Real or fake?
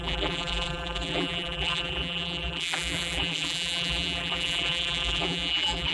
fake